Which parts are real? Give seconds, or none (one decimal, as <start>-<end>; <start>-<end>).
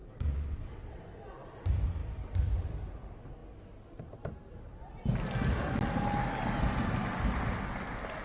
1.0-8.2